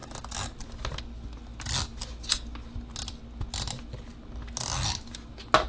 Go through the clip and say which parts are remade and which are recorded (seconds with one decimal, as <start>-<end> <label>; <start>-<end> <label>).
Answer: 0.0-5.7 recorded